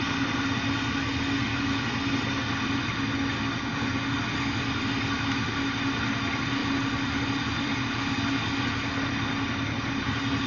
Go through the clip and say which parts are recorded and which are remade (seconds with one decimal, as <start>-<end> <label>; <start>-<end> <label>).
0.0-6.6 recorded; 6.6-8.0 remade; 8.0-10.5 recorded